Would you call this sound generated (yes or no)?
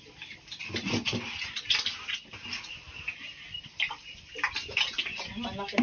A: no